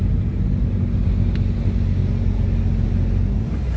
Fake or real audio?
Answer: real